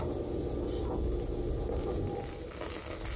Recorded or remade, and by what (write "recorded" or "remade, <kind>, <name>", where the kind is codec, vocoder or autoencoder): recorded